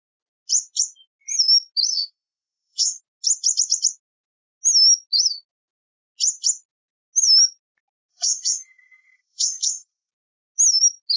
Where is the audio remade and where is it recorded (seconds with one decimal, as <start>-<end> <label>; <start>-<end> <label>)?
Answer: 0.0-1.9 recorded; 1.9-3.0 remade; 3.0-8.1 recorded; 8.1-10.1 remade; 10.1-11.2 recorded